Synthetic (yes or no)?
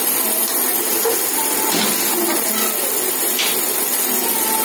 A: no